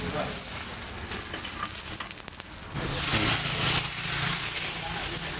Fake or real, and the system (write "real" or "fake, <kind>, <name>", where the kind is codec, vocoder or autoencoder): real